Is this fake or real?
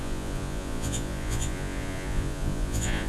fake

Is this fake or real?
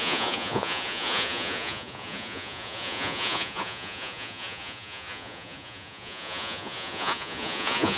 fake